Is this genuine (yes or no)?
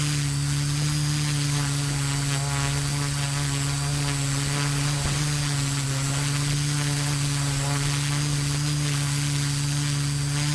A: yes